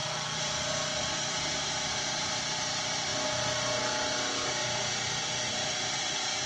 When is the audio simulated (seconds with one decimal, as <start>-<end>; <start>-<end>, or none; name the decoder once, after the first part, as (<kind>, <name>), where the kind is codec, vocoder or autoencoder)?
0.0-3.1 (vocoder, BigVGAN v2); 3.8-4.6; 5.5-6.5